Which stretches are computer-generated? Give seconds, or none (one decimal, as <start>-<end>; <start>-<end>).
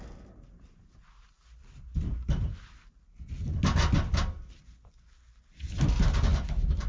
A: none